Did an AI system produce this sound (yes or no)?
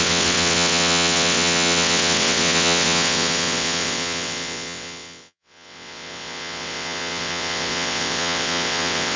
yes